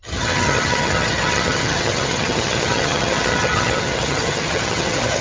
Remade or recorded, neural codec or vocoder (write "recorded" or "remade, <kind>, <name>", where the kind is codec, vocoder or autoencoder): remade, vocoder, HiFi-GAN